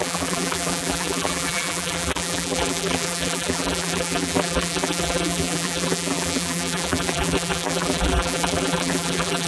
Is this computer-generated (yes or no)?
yes